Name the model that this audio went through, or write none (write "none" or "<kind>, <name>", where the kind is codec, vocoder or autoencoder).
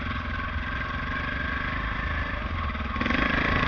none